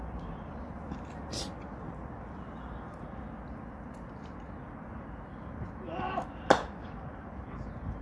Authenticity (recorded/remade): recorded